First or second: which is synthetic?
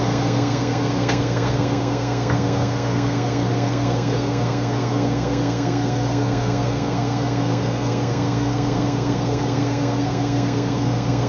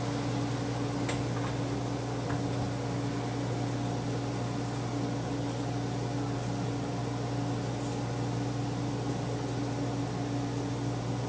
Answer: first